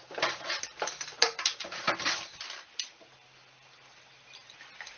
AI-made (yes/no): no